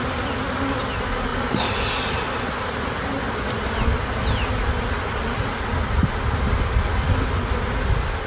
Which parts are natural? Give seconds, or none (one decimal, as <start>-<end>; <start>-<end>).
0.0-8.3